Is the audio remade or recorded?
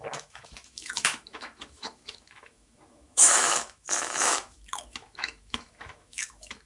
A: remade